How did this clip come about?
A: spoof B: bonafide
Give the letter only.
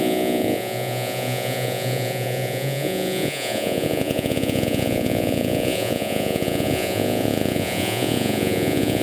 A